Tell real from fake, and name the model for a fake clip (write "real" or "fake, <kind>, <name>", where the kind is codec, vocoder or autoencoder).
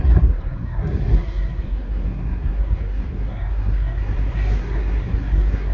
fake, codec, SNAC